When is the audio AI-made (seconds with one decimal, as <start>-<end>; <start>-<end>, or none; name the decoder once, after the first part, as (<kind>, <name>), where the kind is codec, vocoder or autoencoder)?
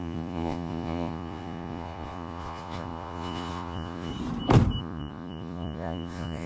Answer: 0.0-4.1 (vocoder, Vocos); 4.8-6.5